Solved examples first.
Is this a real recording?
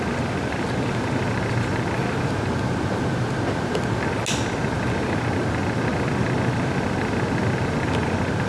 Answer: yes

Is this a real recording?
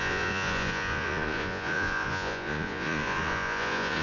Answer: no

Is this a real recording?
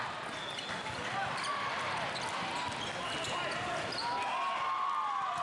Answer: yes